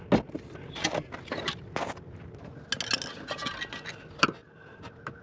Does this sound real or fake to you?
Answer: real